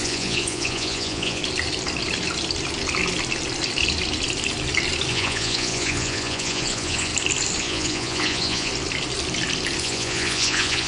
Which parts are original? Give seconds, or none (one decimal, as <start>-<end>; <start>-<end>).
1.4-5.1; 7.1-7.6; 8.7-9.8